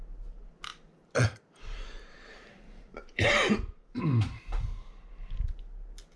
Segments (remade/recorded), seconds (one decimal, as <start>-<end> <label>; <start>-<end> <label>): 0.0-0.7 recorded; 0.7-4.4 remade; 4.4-6.2 recorded